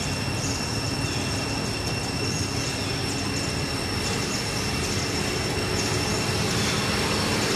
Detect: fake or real real